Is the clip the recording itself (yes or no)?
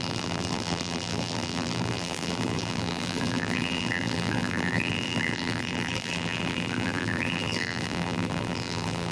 no